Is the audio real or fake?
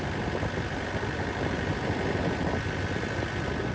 real